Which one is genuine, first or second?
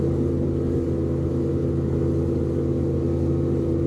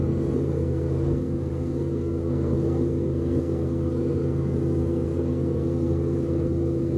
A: first